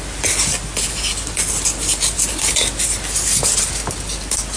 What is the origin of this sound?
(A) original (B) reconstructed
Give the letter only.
A